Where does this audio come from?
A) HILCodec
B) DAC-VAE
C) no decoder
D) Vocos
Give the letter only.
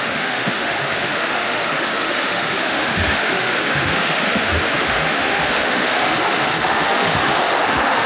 B